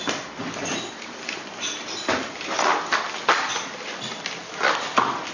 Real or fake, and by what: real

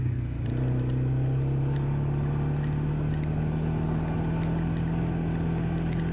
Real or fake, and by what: real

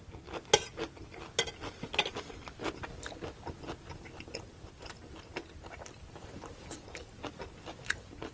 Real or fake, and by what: real